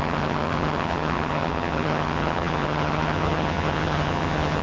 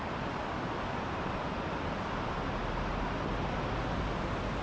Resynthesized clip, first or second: first